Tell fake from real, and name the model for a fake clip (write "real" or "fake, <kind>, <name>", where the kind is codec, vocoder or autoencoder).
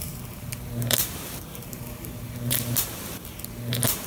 fake, vocoder, BigVGAN v2